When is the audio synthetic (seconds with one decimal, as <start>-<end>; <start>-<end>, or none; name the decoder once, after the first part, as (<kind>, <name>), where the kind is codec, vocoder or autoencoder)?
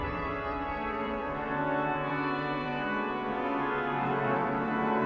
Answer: 0.0-1.6 (vocoder, BigVGAN v2); 2.1-2.7; 4.1-5.1